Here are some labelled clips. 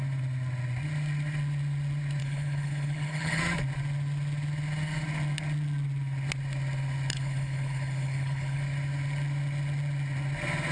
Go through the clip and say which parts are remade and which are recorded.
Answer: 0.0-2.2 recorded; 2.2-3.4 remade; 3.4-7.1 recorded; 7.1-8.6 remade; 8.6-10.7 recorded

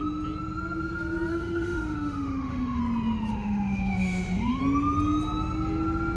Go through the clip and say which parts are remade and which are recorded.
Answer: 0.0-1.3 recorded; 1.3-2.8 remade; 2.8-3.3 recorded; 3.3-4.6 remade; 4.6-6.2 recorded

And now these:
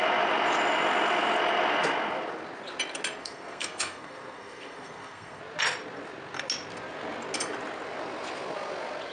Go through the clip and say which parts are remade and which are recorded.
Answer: 0.0-3.2 recorded; 3.2-5.4 remade; 5.4-9.1 recorded

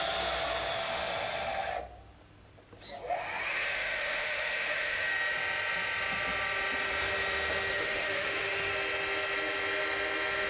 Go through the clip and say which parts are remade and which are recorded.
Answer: 0.0-0.8 recorded; 0.8-1.7 remade; 1.7-3.5 recorded; 3.5-5.1 remade; 5.1-7.7 recorded; 7.7-8.7 remade; 8.7-10.5 recorded

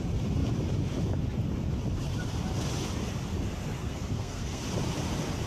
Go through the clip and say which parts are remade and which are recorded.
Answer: 0.0-3.8 recorded; 3.8-4.6 remade; 4.6-5.5 recorded

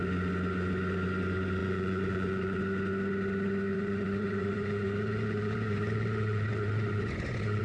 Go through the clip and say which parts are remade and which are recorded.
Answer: 0.0-1.6 recorded; 1.6-2.6 remade; 2.6-3.7 recorded; 3.7-7.6 remade

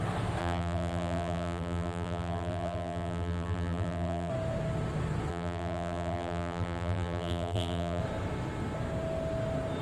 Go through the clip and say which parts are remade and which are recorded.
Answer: 0.0-0.4 recorded; 0.4-4.3 remade; 4.3-5.3 recorded; 5.3-8.0 remade; 8.0-9.8 recorded

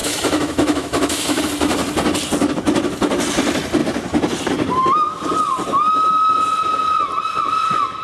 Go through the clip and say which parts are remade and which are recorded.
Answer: 0.0-1.4 remade; 1.4-8.0 recorded